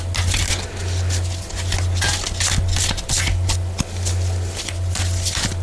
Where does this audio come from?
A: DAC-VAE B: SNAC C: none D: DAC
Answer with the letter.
C